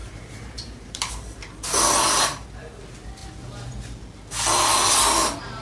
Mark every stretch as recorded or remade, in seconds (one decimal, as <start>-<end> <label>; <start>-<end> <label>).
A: 0.0-1.1 remade; 1.1-2.3 recorded; 2.3-2.8 remade; 2.8-5.6 recorded